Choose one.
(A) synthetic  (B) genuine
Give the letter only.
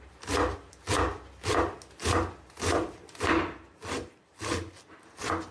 B